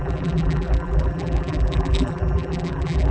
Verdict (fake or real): fake